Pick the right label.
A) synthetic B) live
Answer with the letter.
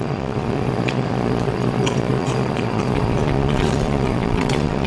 A